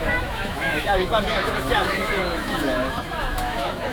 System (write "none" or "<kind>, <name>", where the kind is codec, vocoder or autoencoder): autoencoder, DAC-VAE